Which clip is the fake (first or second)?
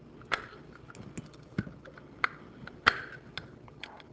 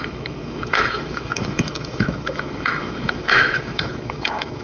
second